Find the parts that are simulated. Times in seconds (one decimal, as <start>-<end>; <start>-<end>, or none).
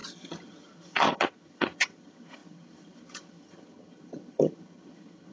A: 0.0-5.3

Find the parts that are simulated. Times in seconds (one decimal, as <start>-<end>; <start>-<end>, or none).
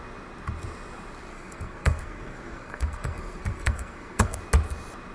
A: 1.3-4.4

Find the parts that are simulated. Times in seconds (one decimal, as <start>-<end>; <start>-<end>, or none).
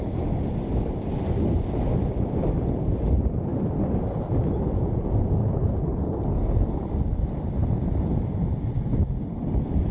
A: 5.4-6.2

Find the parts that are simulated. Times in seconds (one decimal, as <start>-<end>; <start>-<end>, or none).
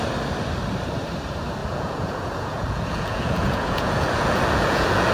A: 1.6-5.1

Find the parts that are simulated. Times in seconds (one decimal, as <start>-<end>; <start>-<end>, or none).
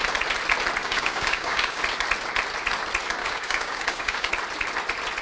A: 0.8-1.8; 3.2-4.3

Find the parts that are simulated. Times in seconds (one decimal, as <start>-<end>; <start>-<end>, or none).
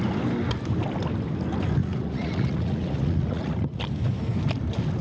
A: 1.8-3.8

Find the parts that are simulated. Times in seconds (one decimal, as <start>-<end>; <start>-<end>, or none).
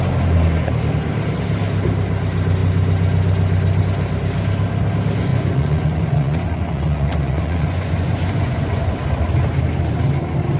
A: 5.3-9.0